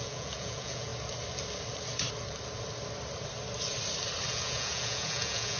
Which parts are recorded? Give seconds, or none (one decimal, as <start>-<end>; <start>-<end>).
0.9-4.3